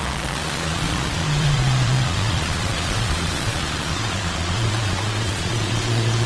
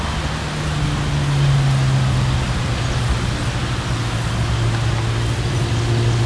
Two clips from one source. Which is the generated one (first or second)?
first